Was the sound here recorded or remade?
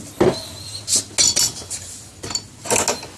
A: recorded